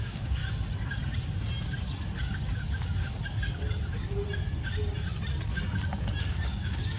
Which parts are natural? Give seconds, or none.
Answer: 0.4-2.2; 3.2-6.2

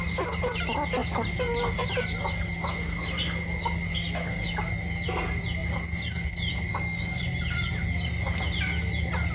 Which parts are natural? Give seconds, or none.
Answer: 0.0-6.7; 7.2-9.3

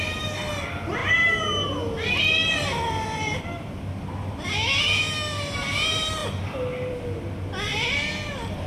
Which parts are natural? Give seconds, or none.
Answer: 0.0-8.7

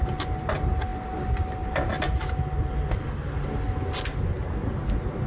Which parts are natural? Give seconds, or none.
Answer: 0.0-5.3

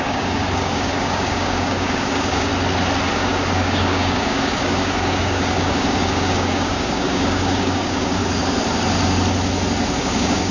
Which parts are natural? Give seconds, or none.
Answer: 2.5-3.1; 8.2-10.0

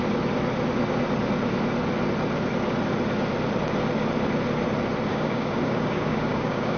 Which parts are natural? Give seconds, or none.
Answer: 0.0-5.1